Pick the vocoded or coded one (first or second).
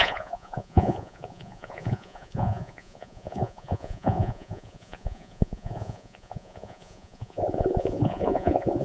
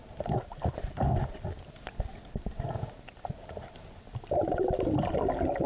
first